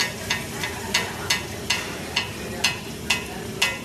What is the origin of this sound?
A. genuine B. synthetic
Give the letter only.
A